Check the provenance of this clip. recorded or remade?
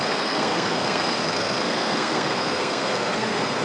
remade